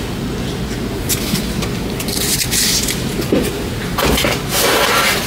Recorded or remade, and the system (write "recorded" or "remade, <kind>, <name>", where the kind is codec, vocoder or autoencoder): recorded